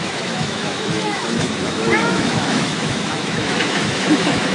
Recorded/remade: remade